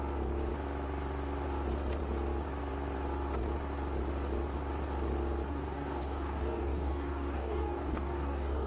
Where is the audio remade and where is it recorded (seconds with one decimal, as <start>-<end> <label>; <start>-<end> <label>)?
0.0-5.5 recorded; 5.5-8.7 remade